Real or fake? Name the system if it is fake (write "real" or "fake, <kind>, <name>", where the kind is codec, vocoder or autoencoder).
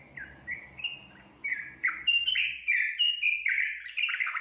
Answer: real